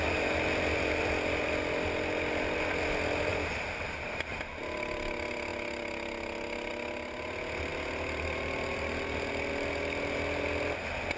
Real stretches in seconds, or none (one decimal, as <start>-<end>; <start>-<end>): 0.0-3.3; 4.4-11.2